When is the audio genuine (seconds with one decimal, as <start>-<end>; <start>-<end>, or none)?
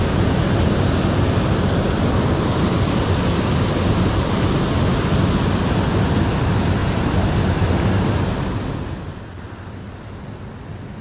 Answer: 0.0-6.8; 7.7-11.0